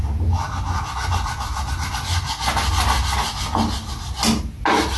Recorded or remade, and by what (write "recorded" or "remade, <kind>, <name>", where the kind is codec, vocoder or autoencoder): recorded